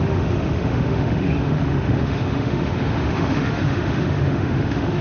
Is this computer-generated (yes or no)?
yes